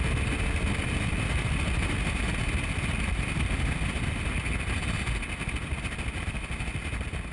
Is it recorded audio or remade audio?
recorded